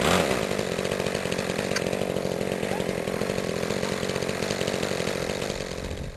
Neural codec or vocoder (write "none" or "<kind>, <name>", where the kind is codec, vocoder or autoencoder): none